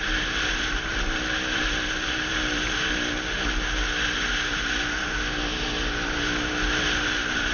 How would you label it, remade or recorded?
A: recorded